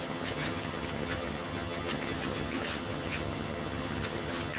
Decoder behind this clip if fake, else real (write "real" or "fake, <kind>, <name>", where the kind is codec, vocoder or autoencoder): fake, vocoder, HiFi-GAN